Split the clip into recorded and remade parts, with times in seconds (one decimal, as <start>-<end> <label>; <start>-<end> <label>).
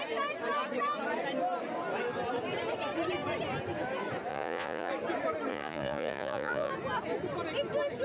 0.0-4.3 recorded; 4.3-4.9 remade; 4.9-5.5 recorded; 5.5-6.7 remade; 6.7-8.0 recorded